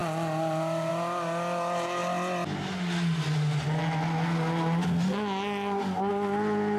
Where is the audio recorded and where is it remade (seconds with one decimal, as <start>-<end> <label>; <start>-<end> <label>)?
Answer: 0.0-6.8 recorded